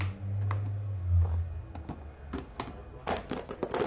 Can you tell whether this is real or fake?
real